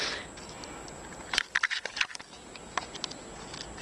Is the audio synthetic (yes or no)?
no